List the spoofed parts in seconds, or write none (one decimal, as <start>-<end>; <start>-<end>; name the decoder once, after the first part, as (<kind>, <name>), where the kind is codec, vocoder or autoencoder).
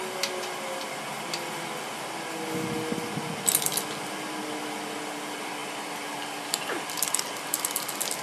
none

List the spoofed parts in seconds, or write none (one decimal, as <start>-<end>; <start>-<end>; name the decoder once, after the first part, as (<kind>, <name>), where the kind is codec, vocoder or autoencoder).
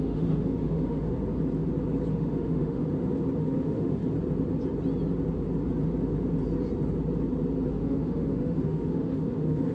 0.0-1.1 (autoencoder, DAC-VAE); 2.1-2.8; 3.4-4.0; 7.7-9.7